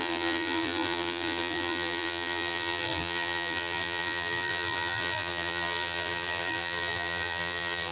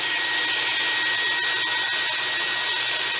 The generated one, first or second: first